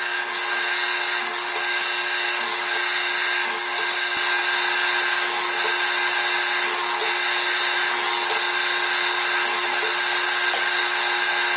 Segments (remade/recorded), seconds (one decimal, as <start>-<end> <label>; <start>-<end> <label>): 0.0-11.6 recorded